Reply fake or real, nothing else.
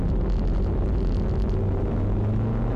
real